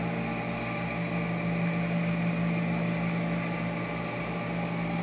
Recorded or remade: recorded